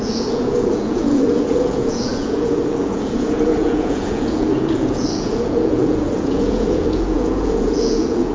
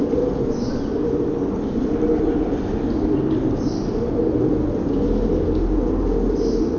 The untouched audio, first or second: second